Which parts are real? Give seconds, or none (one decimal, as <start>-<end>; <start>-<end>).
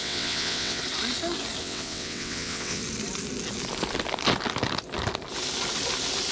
0.8-1.6; 2.8-6.3